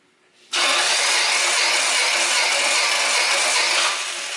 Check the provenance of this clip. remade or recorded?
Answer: recorded